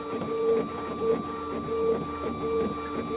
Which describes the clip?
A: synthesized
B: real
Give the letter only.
B